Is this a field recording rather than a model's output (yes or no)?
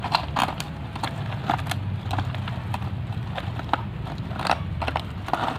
yes